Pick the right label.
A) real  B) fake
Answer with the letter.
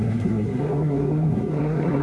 B